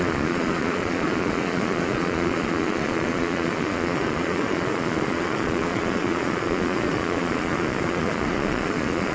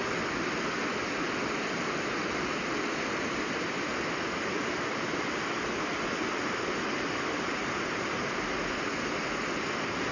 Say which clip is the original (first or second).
second